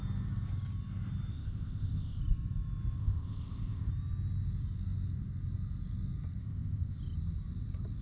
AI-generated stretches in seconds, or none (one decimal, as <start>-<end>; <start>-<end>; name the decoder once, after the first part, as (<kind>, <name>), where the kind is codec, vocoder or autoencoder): 1.3-2.2 (codec, ZipCodec); 3.0-3.9; 6.4-7.0